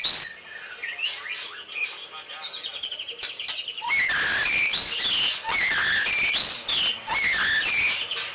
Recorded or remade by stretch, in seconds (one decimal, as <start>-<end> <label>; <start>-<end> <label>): 0.0-8.3 recorded